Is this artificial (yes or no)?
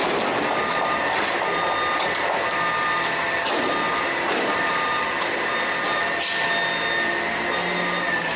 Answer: no